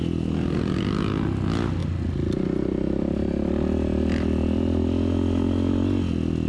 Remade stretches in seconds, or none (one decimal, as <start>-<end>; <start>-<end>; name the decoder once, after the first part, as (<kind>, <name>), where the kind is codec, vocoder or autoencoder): none